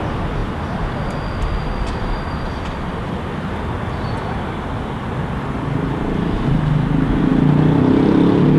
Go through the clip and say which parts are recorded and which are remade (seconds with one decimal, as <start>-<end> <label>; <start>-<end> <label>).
0.0-8.6 recorded